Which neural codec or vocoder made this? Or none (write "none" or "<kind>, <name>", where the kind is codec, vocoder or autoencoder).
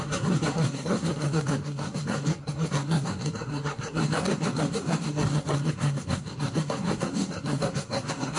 codec, SNAC